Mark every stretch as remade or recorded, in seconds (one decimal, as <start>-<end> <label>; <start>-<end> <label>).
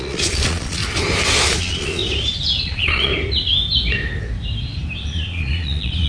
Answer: 0.0-0.8 remade; 0.8-1.6 recorded; 1.6-2.0 remade; 2.0-2.6 recorded; 2.6-3.1 remade; 3.1-5.0 recorded; 5.0-6.1 remade